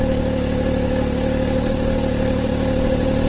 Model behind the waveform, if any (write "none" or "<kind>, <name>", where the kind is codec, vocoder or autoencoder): none